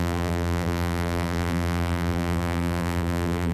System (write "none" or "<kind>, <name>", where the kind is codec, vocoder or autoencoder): vocoder, BigVGAN v2